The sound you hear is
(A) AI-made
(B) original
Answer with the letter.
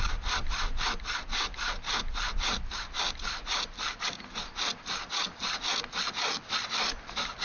B